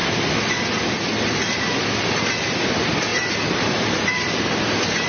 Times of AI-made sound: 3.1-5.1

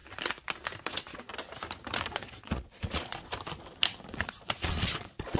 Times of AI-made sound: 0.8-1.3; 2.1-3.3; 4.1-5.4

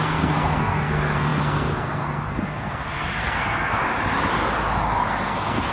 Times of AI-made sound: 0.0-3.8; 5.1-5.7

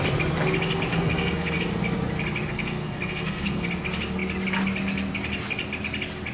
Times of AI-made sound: 0.9-1.6; 2.5-3.7